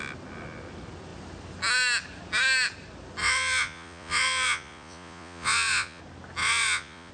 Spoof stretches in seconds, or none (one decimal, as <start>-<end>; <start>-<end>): 3.2-6.0; 6.4-7.1